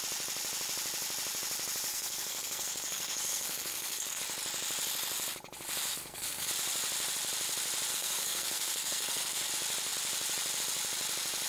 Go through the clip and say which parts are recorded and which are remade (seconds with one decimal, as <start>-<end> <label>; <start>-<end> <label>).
0.0-1.9 recorded; 1.9-4.2 remade; 4.2-5.9 recorded; 5.9-6.5 remade; 6.5-7.9 recorded; 7.9-9.5 remade; 9.5-11.5 recorded